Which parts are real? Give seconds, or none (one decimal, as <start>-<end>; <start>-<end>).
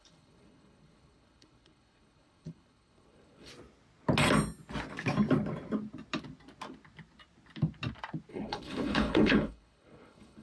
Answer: 3.5-8.3